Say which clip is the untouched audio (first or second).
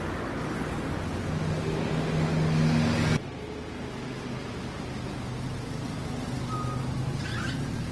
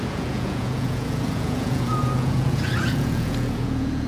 first